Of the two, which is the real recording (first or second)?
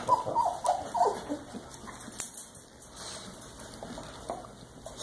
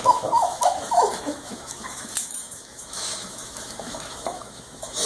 first